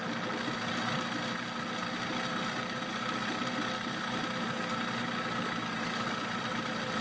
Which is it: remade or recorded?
recorded